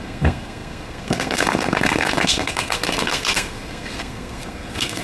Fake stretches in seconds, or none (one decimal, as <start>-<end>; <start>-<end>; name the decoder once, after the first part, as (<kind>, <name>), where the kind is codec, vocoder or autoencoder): 0.0-5.0 (codec, SNAC)